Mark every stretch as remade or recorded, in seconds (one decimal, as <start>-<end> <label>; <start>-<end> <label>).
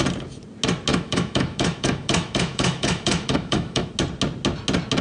0.0-0.9 recorded; 0.9-3.9 remade; 3.9-5.0 recorded